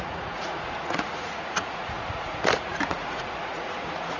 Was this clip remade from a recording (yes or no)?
yes